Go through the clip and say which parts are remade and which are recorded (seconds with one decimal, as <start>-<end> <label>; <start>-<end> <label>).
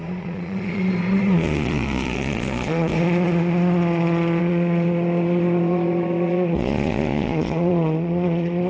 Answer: 0.0-2.9 remade; 2.9-4.4 recorded; 4.4-8.7 remade